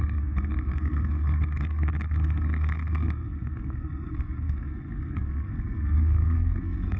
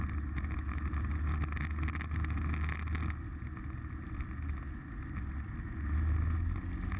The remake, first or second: first